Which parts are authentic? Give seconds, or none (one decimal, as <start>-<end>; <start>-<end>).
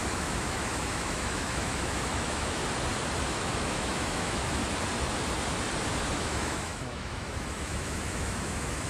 2.6-3.3; 4.6-6.1